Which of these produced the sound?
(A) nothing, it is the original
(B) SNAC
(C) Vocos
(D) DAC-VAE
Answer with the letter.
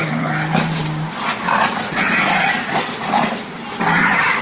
A